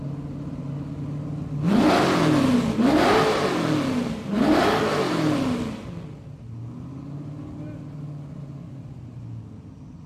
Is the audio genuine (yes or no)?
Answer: yes